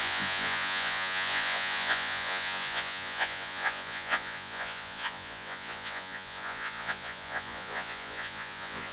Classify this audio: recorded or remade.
remade